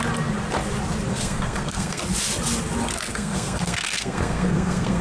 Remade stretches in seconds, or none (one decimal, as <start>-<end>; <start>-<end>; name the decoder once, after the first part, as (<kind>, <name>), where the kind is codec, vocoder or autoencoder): 1.1-2.0 (codec, SNAC); 3.1-5.0